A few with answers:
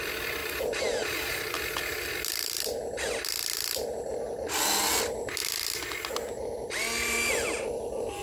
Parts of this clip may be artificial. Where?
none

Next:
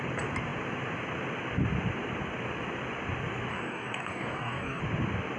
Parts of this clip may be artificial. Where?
3.5-4.8

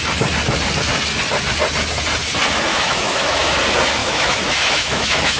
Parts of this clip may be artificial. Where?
2.7-3.6; 4.0-5.4

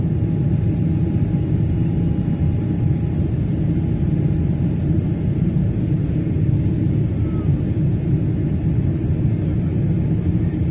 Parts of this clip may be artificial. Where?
5.6-7.1

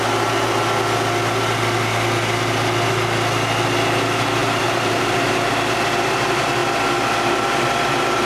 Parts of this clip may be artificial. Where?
4.4-5.5

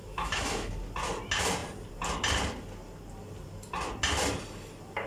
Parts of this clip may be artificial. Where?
0.0-0.7